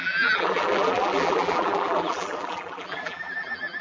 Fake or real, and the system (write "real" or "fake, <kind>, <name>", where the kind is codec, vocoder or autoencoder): fake, vocoder, BigVGAN v2